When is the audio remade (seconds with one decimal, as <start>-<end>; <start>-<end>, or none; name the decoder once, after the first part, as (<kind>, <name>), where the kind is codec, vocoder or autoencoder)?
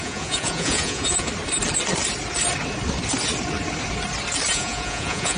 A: 0.0-1.3 (vocoder, Vocos); 4.5-5.4